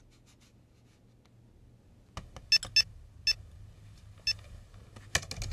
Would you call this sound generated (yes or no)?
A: no